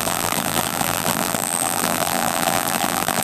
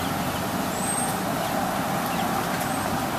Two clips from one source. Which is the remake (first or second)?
first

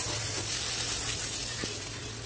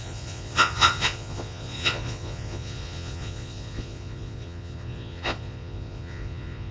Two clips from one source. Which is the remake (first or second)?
second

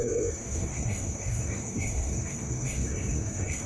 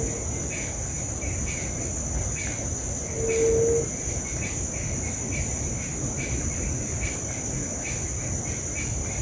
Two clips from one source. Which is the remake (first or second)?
first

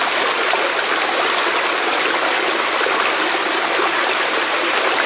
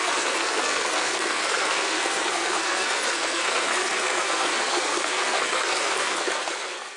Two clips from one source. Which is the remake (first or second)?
second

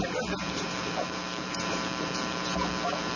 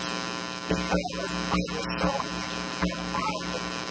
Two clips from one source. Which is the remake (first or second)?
first